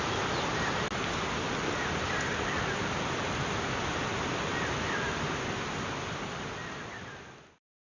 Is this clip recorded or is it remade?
recorded